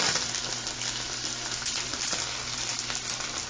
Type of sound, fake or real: real